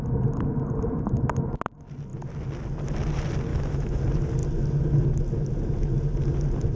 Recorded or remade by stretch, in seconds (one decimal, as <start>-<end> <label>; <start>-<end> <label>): 0.0-3.5 recorded; 3.5-4.0 remade; 4.0-6.8 recorded